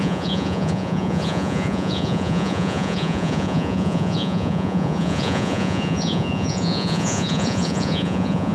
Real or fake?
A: fake